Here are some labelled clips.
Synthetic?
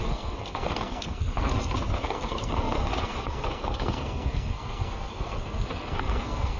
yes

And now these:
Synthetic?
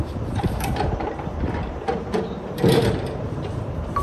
yes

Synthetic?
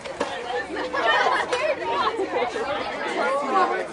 no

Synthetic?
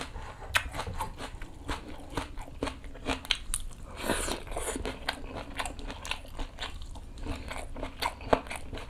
no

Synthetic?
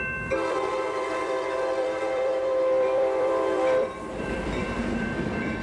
yes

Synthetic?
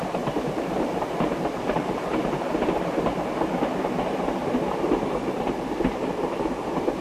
yes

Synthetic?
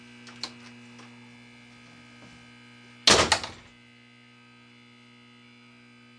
no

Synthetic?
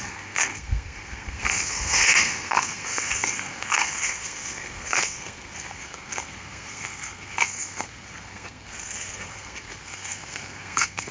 yes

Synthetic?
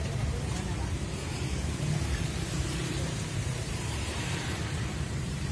yes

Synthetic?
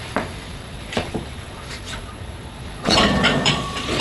yes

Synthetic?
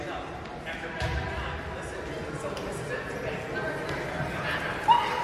no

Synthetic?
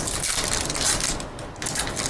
no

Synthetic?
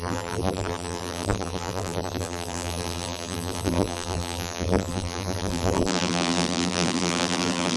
yes